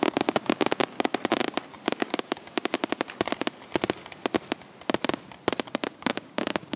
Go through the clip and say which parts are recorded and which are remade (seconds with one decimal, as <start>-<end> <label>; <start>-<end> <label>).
0.0-1.1 remade; 1.1-1.8 recorded; 1.8-2.8 remade; 2.8-5.9 recorded; 5.9-6.8 remade